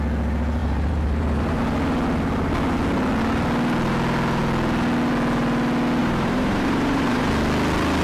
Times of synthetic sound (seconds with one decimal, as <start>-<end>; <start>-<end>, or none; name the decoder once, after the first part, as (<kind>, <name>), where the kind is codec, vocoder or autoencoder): 0.6-1.6 (vocoder, BigVGAN v2); 6.0-7.3